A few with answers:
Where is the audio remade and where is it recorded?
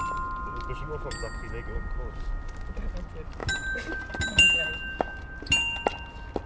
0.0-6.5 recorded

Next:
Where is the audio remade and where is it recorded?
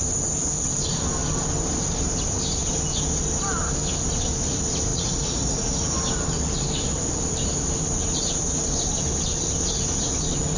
0.0-4.9 recorded; 4.9-5.9 remade; 5.9-10.6 recorded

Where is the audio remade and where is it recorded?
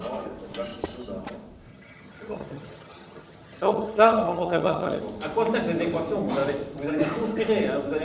0.0-1.7 recorded; 1.7-5.0 remade; 5.0-8.0 recorded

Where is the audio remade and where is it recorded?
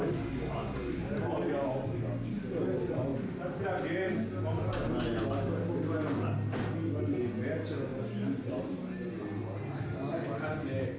0.0-11.0 recorded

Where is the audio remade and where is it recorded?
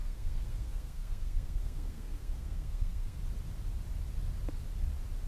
0.0-3.2 remade; 3.2-5.3 recorded